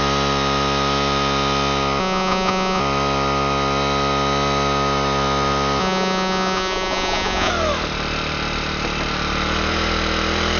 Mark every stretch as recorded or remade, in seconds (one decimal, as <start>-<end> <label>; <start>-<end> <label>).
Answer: 0.0-2.0 recorded; 2.0-2.8 remade; 2.8-5.8 recorded; 5.8-7.5 remade; 7.5-10.6 recorded